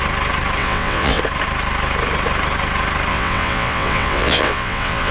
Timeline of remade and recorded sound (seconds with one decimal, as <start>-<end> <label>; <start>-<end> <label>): 0.0-0.6 recorded; 0.6-1.2 remade; 1.2-3.1 recorded; 3.1-5.1 remade